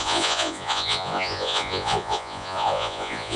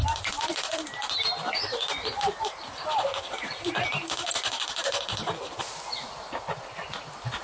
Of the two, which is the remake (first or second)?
first